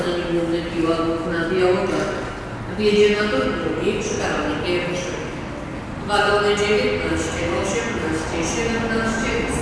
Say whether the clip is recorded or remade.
recorded